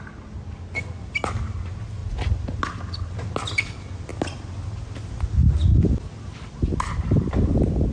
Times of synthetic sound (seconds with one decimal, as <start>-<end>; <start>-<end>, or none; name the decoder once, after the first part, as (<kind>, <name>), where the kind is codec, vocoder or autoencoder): none